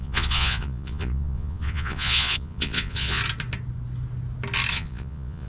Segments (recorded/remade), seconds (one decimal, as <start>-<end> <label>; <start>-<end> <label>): 0.0-3.2 remade; 3.2-4.7 recorded; 4.7-5.5 remade